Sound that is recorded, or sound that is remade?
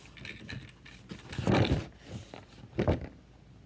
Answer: recorded